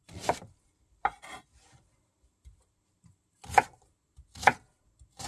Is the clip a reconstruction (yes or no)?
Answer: no